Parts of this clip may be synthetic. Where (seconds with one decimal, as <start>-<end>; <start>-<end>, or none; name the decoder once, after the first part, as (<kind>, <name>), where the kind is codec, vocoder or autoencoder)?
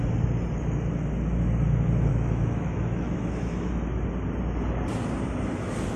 2.1-3.7 (autoencoder, DAC-VAE)